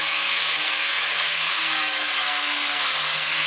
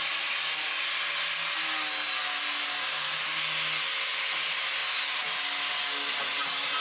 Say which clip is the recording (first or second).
second